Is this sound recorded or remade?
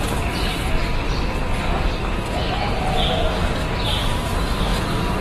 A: recorded